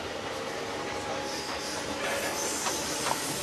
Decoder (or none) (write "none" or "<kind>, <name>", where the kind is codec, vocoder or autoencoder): none